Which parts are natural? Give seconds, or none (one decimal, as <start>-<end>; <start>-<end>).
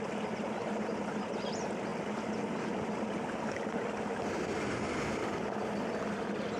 0.0-6.6